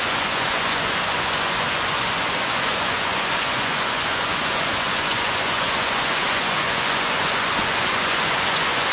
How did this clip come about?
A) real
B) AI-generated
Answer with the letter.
B